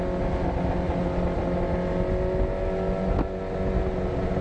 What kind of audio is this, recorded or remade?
recorded